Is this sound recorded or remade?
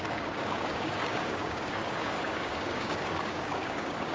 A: remade